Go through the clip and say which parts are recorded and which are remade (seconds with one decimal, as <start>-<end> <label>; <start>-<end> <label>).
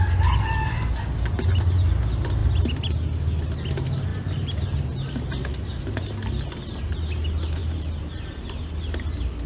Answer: 0.0-4.1 recorded; 4.1-6.1 remade; 6.1-7.6 recorded; 7.6-8.3 remade; 8.3-9.5 recorded